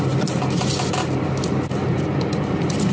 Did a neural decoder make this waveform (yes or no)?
no